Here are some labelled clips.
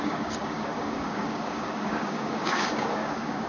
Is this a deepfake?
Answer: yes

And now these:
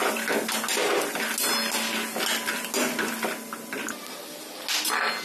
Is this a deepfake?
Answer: no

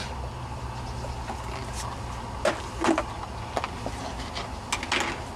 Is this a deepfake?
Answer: no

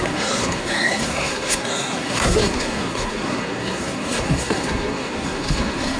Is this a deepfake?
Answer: yes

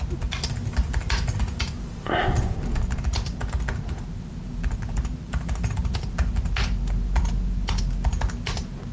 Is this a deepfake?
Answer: no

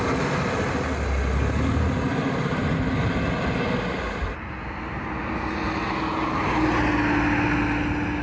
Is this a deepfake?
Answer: no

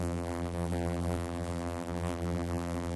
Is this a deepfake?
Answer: yes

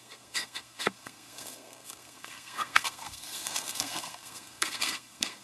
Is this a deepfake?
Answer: yes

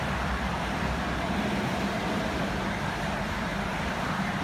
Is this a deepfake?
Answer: yes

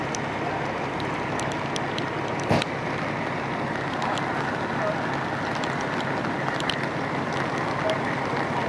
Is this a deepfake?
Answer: no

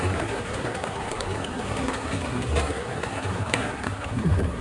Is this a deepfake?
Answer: yes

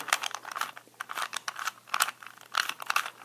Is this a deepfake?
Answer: yes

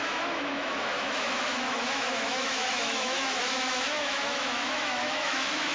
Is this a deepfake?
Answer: yes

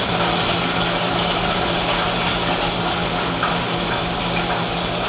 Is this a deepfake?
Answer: no